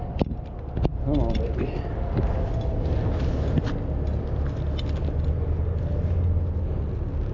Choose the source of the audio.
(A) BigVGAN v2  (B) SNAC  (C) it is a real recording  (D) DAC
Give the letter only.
C